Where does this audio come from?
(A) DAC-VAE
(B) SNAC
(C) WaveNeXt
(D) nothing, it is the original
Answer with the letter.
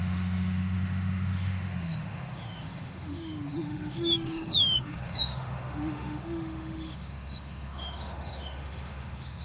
A